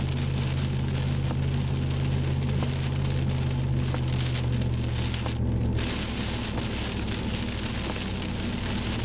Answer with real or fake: real